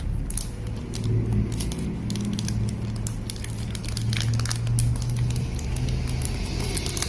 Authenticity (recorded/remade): recorded